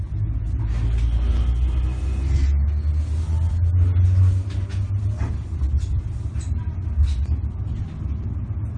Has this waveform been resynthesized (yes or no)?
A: no